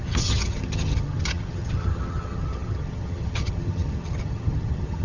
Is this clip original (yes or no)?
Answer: no